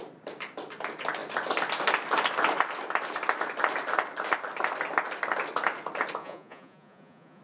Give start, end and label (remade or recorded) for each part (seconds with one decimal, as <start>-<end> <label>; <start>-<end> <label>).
0.0-6.2 recorded; 6.2-7.4 remade